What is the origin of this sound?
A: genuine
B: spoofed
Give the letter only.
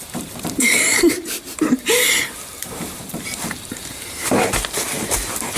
B